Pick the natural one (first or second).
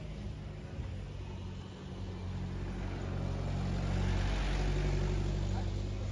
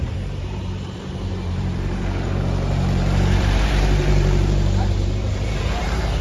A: first